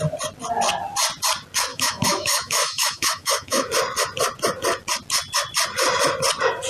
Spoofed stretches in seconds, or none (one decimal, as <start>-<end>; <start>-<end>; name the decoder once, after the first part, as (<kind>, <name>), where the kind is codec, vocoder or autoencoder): 1.7-3.7 (autoencoder, DAC-VAE)